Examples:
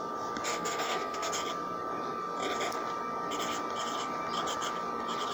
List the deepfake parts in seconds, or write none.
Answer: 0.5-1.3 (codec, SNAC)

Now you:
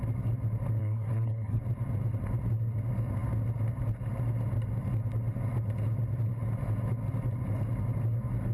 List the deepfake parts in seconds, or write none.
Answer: 0.8-1.6 (codec, SNAC)